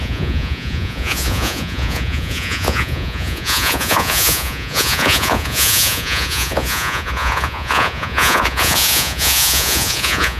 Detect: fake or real fake